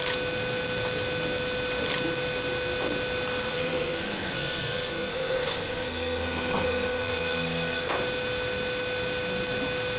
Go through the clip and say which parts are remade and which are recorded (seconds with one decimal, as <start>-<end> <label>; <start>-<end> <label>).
0.0-3.5 recorded; 3.5-7.9 remade; 7.9-10.0 recorded